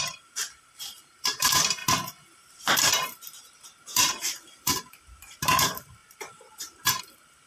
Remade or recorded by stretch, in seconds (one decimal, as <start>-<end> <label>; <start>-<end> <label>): 0.0-1.8 remade; 1.8-2.5 recorded; 2.5-7.5 remade